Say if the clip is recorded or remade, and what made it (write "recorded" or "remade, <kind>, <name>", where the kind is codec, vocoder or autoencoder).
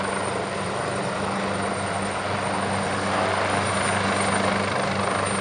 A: recorded